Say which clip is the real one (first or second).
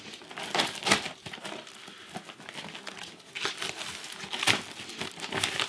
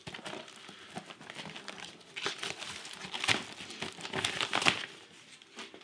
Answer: first